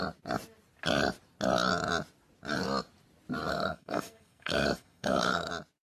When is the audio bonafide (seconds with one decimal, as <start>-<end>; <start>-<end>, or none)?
0.0-3.5; 5.5-6.0